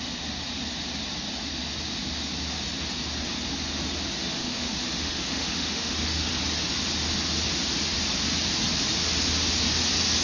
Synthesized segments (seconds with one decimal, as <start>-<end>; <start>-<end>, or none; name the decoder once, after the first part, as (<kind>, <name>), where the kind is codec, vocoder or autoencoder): 4.2-6.3 (autoencoder, DAC-VAE)